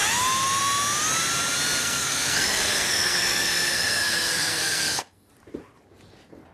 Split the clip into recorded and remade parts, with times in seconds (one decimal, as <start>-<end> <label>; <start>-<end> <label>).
0.0-1.8 recorded; 1.8-5.3 remade; 5.3-6.5 recorded

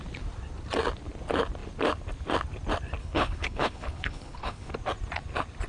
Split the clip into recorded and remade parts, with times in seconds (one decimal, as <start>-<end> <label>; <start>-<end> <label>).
0.0-3.0 recorded; 3.0-4.7 remade; 4.7-5.7 recorded

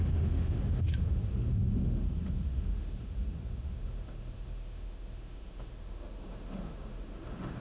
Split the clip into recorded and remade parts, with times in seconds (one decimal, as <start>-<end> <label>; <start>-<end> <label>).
0.0-7.6 remade

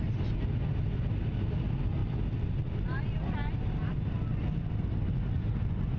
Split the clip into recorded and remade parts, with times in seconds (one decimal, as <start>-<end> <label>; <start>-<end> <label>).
0.0-2.0 recorded; 2.0-3.0 remade; 3.0-6.0 recorded

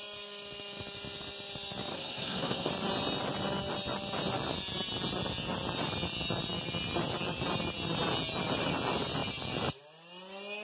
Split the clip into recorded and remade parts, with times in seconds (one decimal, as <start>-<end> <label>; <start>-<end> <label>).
0.0-1.9 recorded; 1.9-2.7 remade; 2.7-10.6 recorded